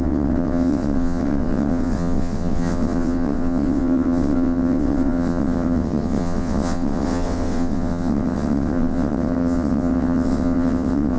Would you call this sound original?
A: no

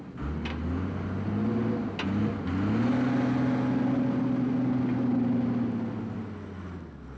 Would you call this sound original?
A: yes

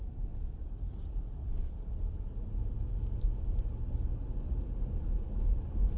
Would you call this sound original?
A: yes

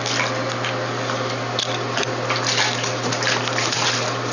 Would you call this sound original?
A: yes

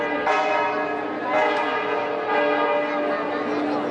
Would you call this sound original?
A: yes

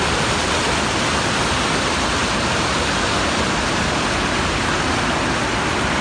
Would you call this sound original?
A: yes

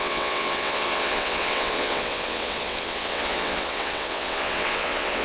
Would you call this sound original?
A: no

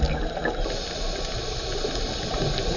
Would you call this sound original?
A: yes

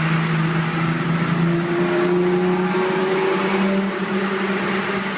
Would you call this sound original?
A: yes